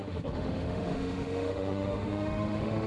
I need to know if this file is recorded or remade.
remade